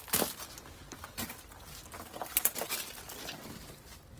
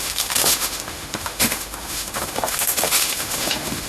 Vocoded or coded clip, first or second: second